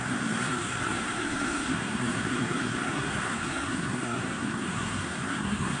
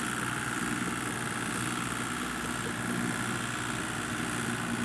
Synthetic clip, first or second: first